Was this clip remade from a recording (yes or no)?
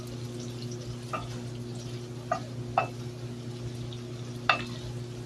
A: no